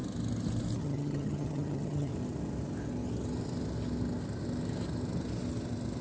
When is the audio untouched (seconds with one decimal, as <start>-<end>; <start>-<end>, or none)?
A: 0.0-0.8; 2.1-6.0